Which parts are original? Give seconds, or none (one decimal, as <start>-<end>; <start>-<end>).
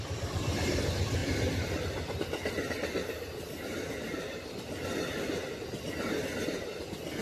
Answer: 0.0-7.2